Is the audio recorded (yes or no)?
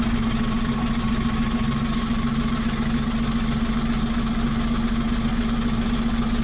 yes